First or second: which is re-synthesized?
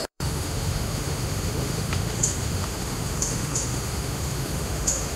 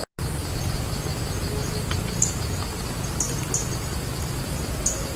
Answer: first